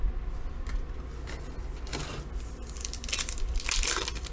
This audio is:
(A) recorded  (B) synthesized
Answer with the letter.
A